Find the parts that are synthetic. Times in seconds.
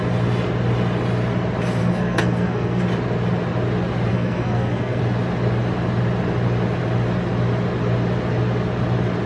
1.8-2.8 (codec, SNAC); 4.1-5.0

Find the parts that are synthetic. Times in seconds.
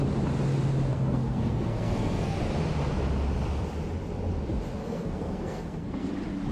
0.9-2.4 (codec, SNAC); 4.8-6.1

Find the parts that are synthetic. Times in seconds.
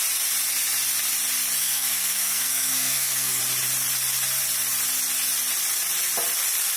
1.6-3.4 (codec, SNAC)